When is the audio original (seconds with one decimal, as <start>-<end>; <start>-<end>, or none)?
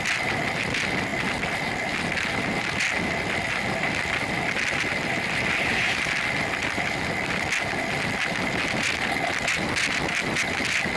0.0-11.0